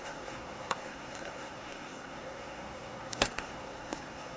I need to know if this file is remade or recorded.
remade